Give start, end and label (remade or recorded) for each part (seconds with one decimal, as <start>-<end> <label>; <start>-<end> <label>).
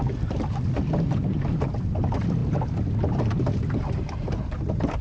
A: 0.0-5.0 recorded